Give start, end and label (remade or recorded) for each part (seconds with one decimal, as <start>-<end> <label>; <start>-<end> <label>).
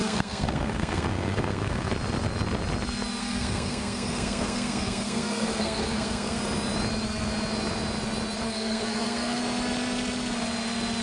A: 0.0-1.9 remade; 1.9-3.2 recorded; 3.2-6.4 remade; 6.4-8.4 recorded; 8.4-9.4 remade; 9.4-11.0 recorded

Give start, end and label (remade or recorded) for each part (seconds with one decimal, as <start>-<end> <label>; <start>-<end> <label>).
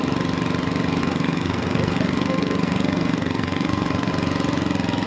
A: 0.0-1.0 recorded; 1.0-4.1 remade; 4.1-5.1 recorded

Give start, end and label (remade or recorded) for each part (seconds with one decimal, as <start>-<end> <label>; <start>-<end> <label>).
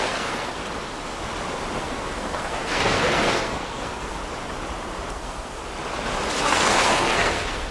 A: 0.0-0.6 remade; 0.6-1.8 recorded; 1.8-4.2 remade; 4.2-5.1 recorded; 5.1-5.6 remade; 5.6-6.4 recorded; 6.4-7.7 remade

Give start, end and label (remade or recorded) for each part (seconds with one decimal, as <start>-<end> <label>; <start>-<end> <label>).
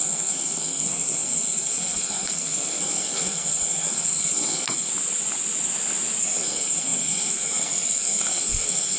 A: 0.0-4.9 remade; 4.9-6.2 recorded; 6.2-9.0 remade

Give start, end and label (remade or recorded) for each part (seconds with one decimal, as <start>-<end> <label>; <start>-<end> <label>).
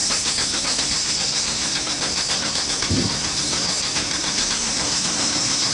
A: 0.0-5.7 remade